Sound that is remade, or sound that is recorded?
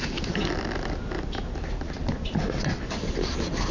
recorded